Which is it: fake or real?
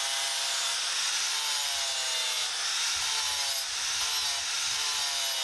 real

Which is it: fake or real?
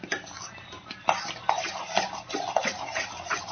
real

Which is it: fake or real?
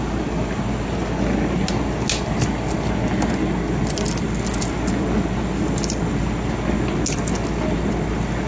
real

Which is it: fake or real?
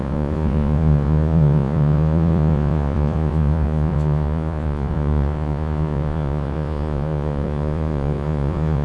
fake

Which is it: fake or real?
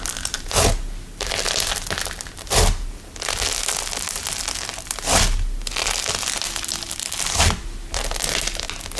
real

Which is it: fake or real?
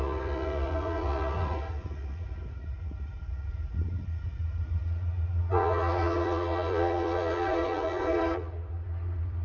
fake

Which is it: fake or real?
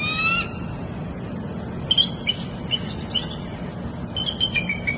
real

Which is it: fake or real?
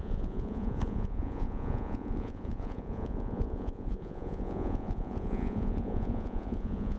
fake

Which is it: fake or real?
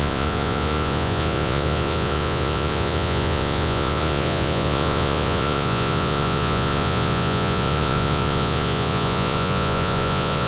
fake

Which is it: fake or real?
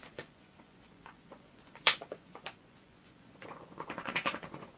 fake